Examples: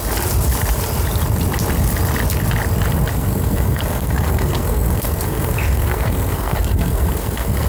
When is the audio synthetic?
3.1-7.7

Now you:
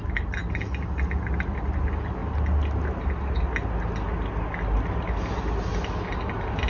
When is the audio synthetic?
none

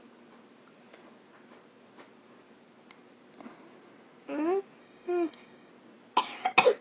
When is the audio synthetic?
4.8-5.7

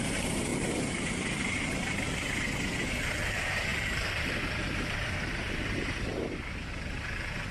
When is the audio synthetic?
0.0-7.5

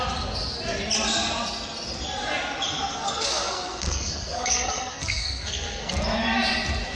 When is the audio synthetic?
2.9-5.9